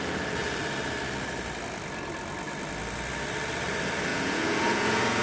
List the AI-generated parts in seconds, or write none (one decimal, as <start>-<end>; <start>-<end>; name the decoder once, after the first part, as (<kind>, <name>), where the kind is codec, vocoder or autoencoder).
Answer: 4.1-5.2 (vocoder, Vocos)